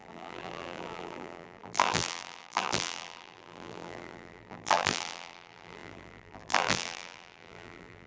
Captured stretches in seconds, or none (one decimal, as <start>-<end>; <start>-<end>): none